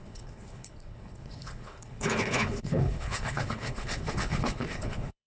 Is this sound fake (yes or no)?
yes